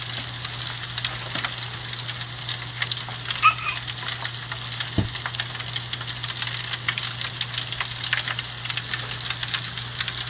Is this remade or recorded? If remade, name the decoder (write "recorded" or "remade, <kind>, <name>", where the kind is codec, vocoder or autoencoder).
recorded